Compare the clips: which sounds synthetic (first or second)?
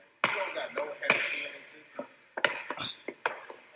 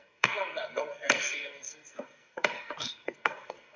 second